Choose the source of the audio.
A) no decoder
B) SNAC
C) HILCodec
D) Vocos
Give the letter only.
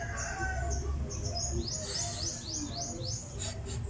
A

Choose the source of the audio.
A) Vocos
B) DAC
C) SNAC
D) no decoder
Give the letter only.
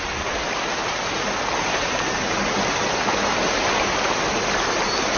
D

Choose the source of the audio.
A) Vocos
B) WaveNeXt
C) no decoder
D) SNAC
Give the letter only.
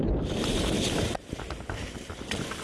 C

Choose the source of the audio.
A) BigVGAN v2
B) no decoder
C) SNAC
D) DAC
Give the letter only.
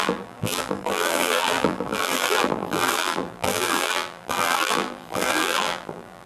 A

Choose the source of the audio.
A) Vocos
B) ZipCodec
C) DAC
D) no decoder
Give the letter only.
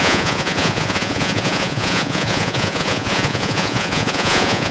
A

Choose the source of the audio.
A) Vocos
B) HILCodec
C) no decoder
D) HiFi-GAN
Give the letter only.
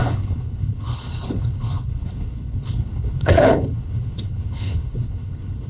B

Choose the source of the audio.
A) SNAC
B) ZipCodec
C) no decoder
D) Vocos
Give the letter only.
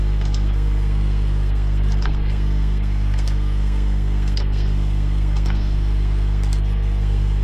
A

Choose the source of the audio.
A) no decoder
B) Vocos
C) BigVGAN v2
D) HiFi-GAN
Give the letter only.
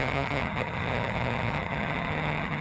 D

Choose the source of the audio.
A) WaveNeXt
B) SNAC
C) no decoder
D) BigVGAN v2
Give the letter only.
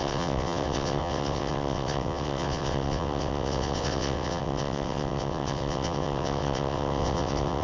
A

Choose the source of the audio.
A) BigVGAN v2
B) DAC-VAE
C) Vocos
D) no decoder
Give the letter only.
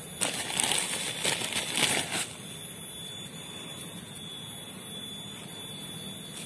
D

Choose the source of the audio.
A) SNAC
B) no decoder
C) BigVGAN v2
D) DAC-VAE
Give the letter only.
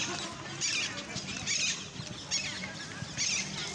B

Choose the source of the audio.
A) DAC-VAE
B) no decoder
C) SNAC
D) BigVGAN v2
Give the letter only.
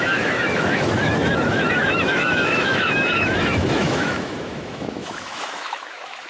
A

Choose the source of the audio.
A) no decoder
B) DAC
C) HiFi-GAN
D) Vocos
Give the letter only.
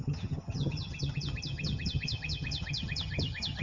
C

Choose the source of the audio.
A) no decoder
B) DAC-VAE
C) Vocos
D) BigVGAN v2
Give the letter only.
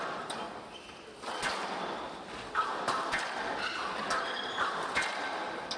A